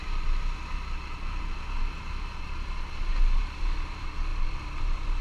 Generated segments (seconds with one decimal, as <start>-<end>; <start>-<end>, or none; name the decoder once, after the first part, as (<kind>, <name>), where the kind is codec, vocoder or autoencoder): none